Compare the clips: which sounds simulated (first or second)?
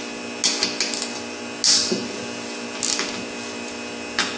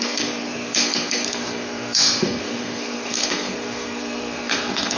second